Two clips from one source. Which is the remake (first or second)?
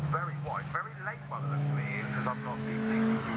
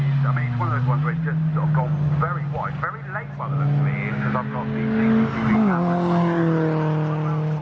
first